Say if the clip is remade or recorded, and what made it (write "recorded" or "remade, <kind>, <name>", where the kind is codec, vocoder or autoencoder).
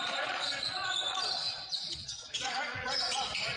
remade, vocoder, Vocos